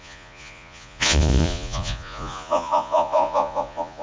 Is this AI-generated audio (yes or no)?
yes